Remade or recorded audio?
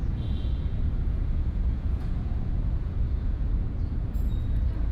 remade